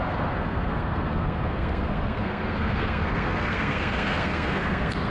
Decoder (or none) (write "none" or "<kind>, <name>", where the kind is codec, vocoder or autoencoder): codec, SNAC